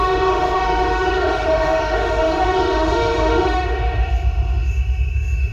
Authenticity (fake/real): fake